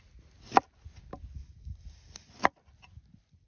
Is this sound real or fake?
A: real